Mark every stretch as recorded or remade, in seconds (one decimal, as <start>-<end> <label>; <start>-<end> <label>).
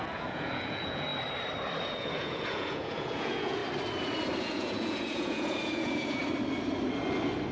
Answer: 0.0-1.1 remade; 1.1-1.8 recorded; 1.8-3.6 remade; 3.6-4.4 recorded; 4.4-6.2 remade; 6.2-7.5 recorded